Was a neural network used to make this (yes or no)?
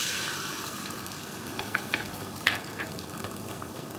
yes